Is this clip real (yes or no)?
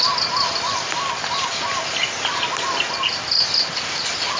yes